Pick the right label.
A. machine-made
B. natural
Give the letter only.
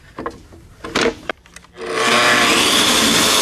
B